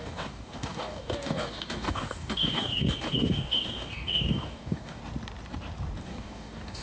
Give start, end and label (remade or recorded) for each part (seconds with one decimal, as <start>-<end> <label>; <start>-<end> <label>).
0.0-5.0 remade; 5.0-6.0 recorded; 6.0-6.8 remade